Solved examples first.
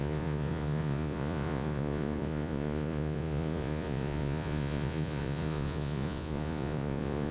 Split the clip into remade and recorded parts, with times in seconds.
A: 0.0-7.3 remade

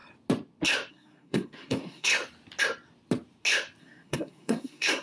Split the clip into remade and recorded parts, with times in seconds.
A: 0.0-0.9 recorded; 0.9-2.1 remade; 2.1-3.8 recorded; 3.8-5.0 remade

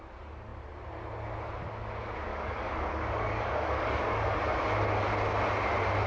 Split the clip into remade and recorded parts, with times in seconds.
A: 0.0-2.3 recorded; 2.3-4.4 remade; 4.4-6.1 recorded

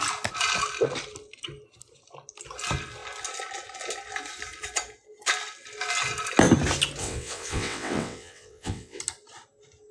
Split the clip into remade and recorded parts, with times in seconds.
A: 0.0-7.0 recorded; 7.0-9.0 remade; 9.0-9.9 recorded

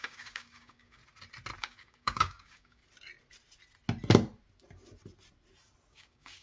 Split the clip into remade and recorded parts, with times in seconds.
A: 0.0-1.0 remade; 1.0-1.6 recorded; 1.6-2.8 remade; 2.8-5.9 recorded; 5.9-6.4 remade